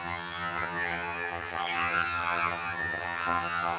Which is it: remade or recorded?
remade